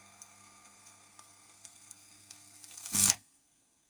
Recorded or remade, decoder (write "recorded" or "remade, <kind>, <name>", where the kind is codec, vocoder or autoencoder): remade, codec, SNAC